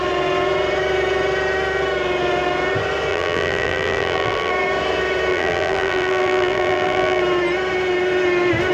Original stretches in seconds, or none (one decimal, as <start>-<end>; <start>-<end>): 0.0-3.1; 4.5-5.3; 7.2-8.7